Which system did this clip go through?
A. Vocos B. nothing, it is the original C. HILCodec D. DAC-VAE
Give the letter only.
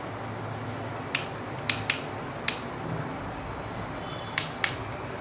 B